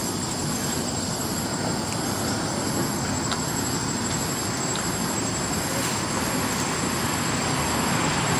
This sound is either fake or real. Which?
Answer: real